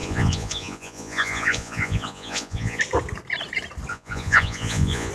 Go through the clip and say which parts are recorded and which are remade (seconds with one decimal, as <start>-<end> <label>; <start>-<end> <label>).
0.0-2.8 remade; 2.8-3.9 recorded; 3.9-5.1 remade